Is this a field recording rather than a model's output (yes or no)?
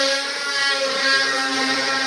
no